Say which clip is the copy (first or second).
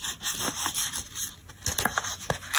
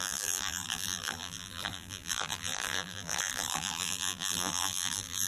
second